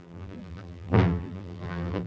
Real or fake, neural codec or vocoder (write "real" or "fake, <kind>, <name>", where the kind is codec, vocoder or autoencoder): fake, vocoder, BigVGAN v2